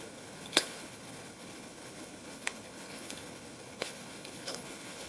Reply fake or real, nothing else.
fake